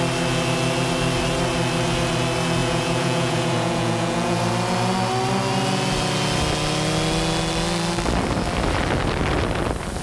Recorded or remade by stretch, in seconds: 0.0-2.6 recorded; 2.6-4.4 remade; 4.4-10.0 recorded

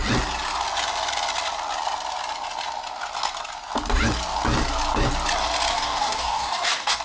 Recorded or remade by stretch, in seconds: 0.0-5.7 recorded; 5.7-7.0 remade